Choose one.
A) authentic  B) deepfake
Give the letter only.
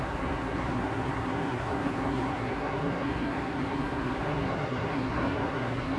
B